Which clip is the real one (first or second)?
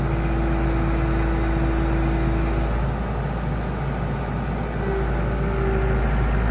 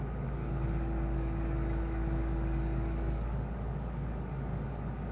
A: first